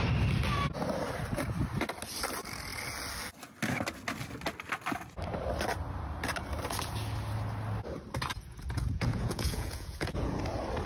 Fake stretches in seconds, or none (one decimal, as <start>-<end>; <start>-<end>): 8.3-10.4